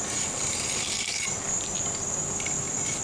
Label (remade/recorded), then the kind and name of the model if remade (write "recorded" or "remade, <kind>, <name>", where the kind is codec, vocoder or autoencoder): remade, vocoder, BigVGAN v2